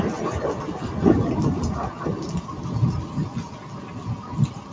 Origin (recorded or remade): recorded